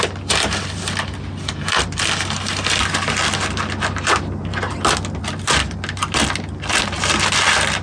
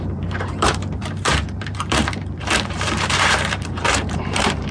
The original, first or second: first